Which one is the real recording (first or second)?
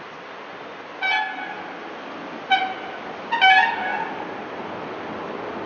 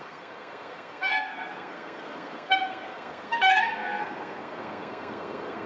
first